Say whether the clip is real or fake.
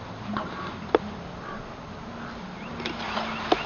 real